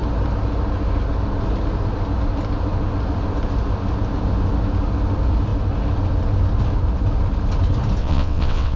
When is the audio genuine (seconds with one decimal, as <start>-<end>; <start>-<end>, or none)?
0.0-8.0